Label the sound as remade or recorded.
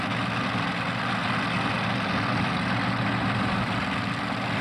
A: recorded